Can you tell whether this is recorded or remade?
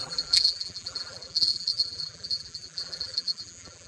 remade